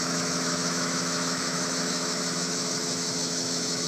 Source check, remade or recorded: remade